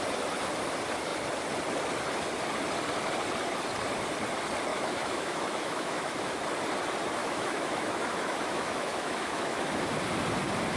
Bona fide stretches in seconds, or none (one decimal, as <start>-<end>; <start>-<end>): 0.0-4.7; 6.4-7.2; 9.8-10.8